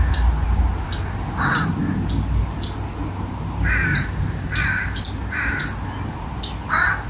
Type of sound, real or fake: real